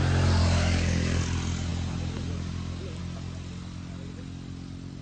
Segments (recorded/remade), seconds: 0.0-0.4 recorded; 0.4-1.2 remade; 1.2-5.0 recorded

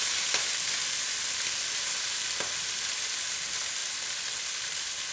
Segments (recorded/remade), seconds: 0.0-5.1 recorded

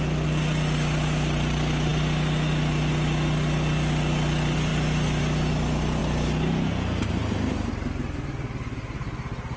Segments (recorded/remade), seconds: 0.0-9.6 recorded

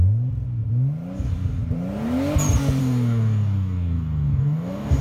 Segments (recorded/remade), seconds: 0.0-2.8 recorded; 2.8-5.0 remade

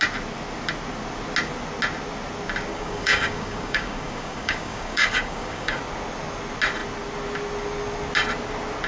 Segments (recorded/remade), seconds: 0.0-2.7 recorded; 2.7-5.8 remade; 5.8-8.9 recorded

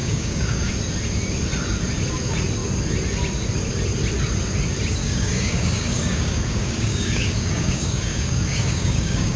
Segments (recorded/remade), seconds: 0.0-0.7 remade; 0.7-5.0 recorded; 5.0-9.4 remade